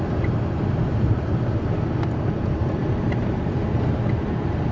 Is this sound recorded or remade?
recorded